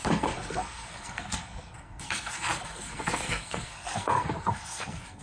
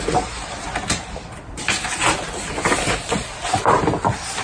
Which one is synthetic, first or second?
first